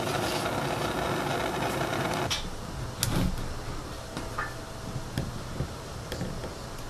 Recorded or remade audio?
recorded